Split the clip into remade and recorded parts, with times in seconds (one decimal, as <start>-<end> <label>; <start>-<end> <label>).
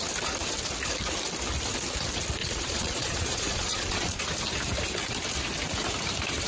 0.0-2.4 recorded; 2.4-4.2 remade; 4.2-6.5 recorded